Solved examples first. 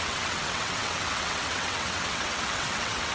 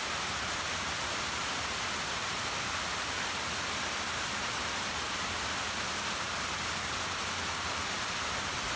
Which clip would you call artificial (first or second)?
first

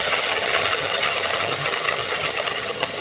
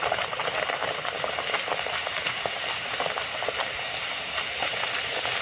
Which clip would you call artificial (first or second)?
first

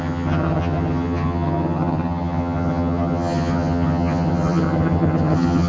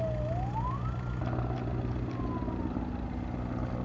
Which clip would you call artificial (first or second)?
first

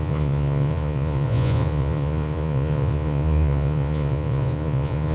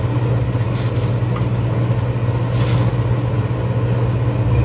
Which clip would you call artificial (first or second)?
first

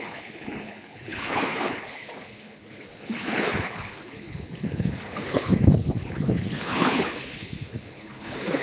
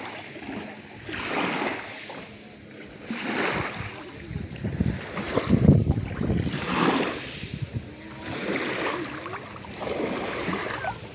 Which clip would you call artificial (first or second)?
first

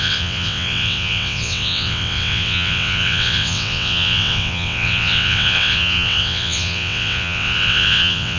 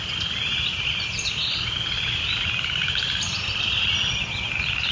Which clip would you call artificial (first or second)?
first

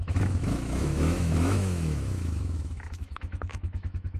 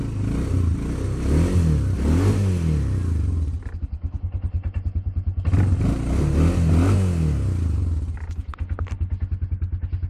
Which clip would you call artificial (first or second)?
first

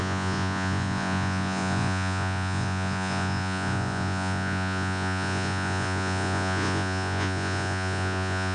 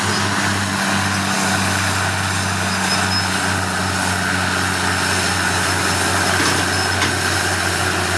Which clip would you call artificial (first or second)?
first